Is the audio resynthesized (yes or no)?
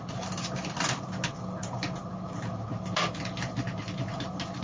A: no